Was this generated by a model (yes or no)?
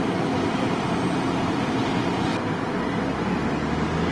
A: no